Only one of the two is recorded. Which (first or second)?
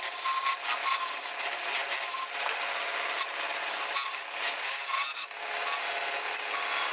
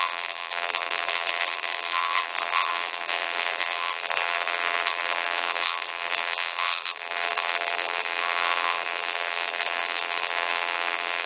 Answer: first